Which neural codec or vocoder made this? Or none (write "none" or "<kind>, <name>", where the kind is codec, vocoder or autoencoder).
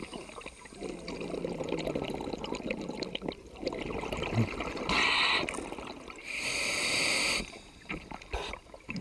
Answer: none